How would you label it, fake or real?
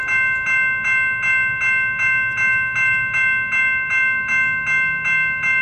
real